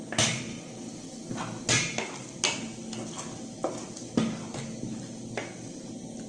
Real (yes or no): yes